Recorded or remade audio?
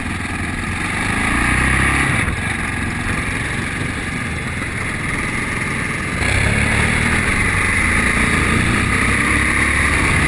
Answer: recorded